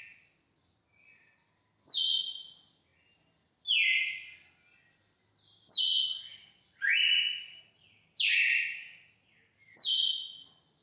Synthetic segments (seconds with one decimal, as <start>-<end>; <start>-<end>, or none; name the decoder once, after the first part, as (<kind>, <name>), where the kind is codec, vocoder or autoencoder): none